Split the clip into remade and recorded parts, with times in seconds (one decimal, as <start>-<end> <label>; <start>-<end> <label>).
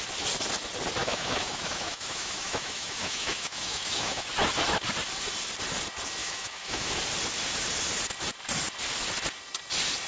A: 0.0-1.0 recorded; 1.0-4.3 remade; 4.3-6.2 recorded; 6.2-7.0 remade; 7.0-10.1 recorded